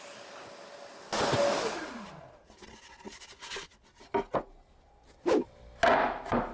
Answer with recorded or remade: recorded